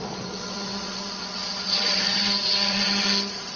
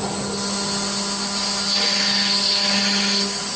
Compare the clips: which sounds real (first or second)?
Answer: second